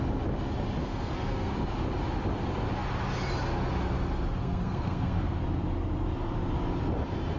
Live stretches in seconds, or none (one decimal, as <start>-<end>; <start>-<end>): 0.0-0.8; 1.5-4.4; 5.4-7.4